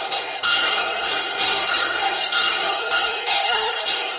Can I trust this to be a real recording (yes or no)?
no